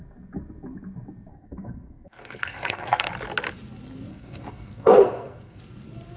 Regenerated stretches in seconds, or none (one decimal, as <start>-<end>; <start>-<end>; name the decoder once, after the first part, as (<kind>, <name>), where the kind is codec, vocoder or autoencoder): 1.3-3.1 (codec, SNAC); 4.1-5.6